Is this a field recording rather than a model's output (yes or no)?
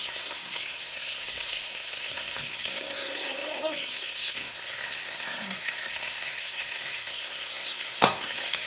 no